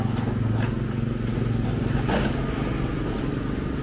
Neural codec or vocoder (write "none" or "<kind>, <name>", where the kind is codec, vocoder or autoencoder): none